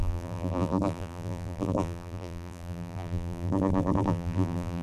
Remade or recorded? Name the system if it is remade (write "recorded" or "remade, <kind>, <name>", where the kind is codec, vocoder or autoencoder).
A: remade, vocoder, BigVGAN v2